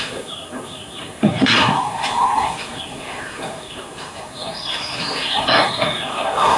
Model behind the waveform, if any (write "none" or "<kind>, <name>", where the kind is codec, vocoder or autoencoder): codec, SNAC